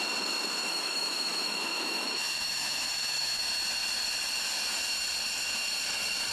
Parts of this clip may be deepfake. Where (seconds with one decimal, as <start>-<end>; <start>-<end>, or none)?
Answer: 0.6-3.4